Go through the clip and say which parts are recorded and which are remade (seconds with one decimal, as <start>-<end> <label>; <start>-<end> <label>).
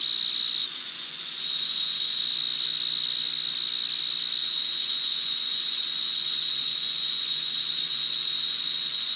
0.0-0.6 recorded; 0.6-2.2 remade; 2.2-4.4 recorded; 4.4-9.2 remade